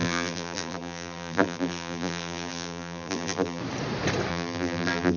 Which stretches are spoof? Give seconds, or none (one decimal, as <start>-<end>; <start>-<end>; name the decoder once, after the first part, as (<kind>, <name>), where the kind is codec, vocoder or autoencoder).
0.0-3.6 (vocoder, BigVGAN v2); 4.3-5.2

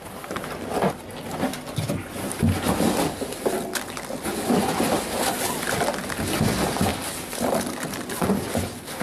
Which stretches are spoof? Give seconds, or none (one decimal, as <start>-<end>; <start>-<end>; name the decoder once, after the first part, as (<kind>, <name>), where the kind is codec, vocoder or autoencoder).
none

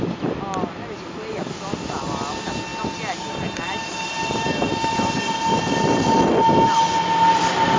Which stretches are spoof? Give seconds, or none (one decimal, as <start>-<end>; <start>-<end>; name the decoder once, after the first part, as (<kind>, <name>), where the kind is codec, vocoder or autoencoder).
none

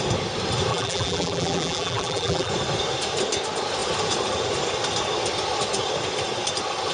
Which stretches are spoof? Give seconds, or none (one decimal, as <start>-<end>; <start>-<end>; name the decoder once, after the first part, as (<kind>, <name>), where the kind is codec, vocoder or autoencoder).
0.7-2.5 (vocoder, BigVGAN v2)

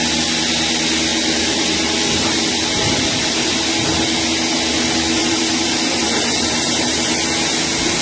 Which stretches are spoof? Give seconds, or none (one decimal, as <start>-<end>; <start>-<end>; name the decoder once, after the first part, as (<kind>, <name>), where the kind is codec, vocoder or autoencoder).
1.1-3.7 (vocoder, BigVGAN v2); 5.2-7.1

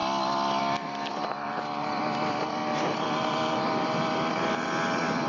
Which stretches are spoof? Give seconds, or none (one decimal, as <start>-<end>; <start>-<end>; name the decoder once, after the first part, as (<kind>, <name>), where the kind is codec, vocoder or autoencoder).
1.1-2.0 (vocoder, BigVGAN v2); 2.7-4.5

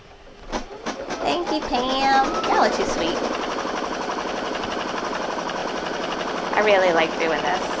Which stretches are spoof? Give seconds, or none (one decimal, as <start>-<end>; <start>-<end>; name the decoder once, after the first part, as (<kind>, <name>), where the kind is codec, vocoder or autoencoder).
none

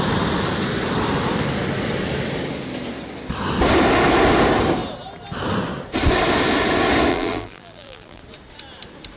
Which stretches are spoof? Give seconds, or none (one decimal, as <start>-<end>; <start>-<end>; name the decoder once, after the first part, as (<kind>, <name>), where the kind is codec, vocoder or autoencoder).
7.1-8.2 (vocoder, BigVGAN v2)